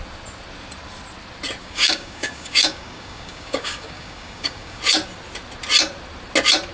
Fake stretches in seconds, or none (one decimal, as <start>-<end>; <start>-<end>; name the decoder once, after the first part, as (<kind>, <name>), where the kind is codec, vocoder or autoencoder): 1.6-4.8 (codec, DAC)